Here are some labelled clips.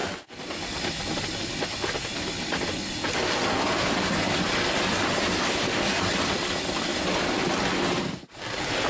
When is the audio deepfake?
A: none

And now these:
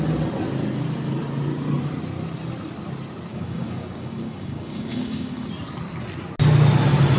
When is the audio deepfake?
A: 3.3-5.5 (codec, DAC)

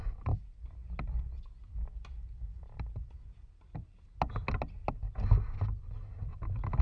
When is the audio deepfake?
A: none

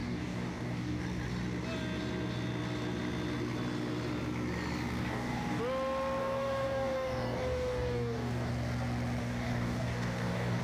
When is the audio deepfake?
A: 0.0-1.0 (codec, DAC); 5.0-5.6; 6.2-8.5; 9.2-10.6

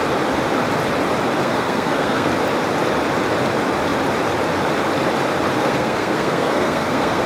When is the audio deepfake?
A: 1.4-2.3 (codec, SNAC); 5.6-7.3

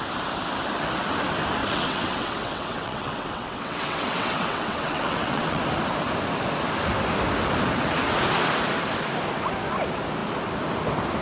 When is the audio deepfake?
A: 1.6-5.6 (vocoder, WaveNeXt)